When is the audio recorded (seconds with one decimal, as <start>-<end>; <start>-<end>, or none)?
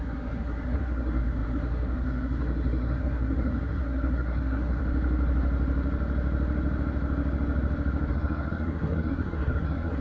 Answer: 4.8-8.1